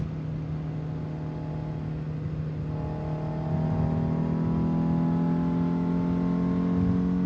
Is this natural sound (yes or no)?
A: yes